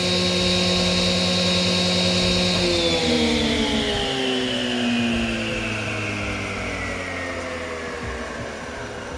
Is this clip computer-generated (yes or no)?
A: no